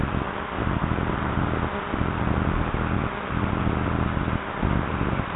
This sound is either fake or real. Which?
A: real